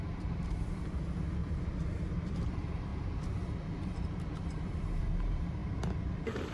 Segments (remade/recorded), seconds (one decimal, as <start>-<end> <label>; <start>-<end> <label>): 0.0-1.4 remade; 1.4-2.0 recorded; 2.0-5.6 remade; 5.6-6.5 recorded